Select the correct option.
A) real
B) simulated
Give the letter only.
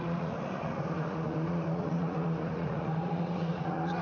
B